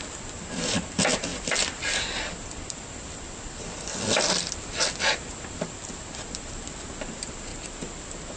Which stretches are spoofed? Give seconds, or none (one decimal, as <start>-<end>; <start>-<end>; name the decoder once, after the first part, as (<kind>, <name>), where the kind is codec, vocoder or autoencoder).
0.0-7.5 (vocoder, BigVGAN v2)